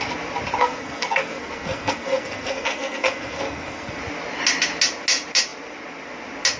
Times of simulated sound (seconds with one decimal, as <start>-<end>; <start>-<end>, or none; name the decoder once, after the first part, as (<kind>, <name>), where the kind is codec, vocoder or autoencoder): 0.6-4.0 (codec, SNAC)